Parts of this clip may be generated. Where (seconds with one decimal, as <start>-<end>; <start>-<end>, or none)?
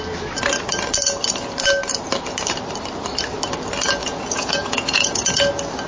4.0-5.5